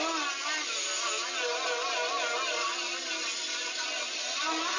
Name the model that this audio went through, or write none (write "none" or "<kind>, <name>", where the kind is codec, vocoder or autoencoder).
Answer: none